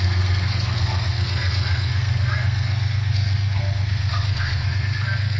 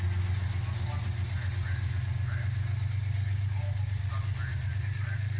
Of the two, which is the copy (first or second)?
first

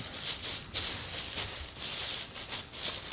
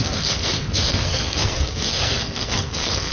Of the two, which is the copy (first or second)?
second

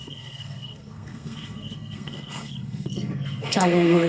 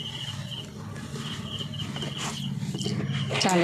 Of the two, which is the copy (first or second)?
first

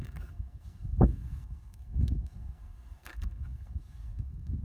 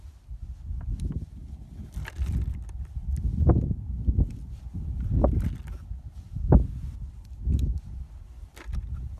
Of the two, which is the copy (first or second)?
first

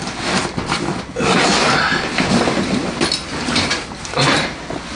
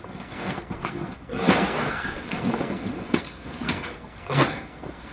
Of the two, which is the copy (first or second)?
second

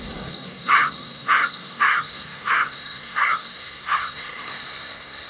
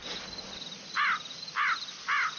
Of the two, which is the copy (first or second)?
first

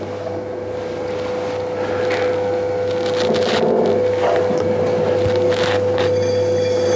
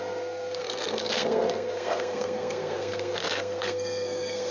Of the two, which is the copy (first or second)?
second